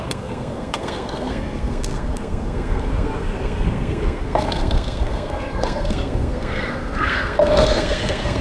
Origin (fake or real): fake